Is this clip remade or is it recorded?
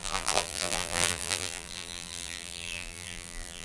remade